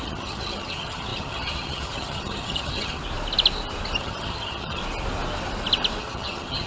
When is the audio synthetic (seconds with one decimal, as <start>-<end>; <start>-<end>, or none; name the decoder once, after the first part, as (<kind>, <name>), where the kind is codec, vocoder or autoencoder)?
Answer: 0.0-3.0 (vocoder, HiFi-GAN); 4.0-4.8; 6.0-6.7